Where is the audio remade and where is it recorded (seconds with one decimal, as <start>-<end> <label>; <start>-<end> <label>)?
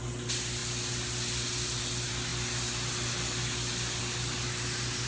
0.0-5.1 recorded